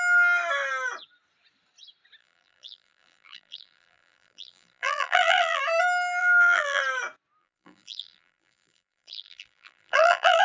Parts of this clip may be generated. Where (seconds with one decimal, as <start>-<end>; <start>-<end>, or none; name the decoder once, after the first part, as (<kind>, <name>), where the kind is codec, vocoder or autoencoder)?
2.2-5.6 (vocoder, BigVGAN v2); 6.2-6.8; 7.4-10.4